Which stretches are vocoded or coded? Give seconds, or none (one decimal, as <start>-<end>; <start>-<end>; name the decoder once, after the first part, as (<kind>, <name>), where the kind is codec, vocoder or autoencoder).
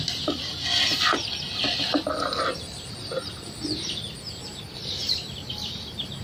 none